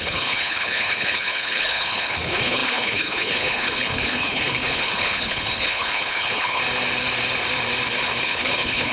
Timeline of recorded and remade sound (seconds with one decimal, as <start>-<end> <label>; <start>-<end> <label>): 0.0-6.6 remade; 6.6-8.2 recorded; 8.2-8.9 remade